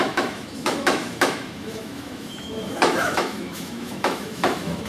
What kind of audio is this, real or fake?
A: fake